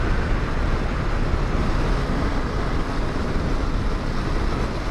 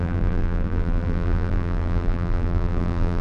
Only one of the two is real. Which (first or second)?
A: first